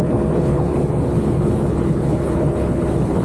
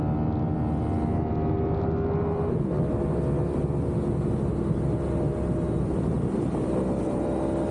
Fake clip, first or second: first